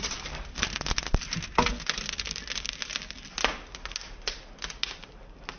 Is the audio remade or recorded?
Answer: recorded